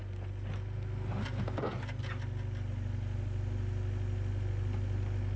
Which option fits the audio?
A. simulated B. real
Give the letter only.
B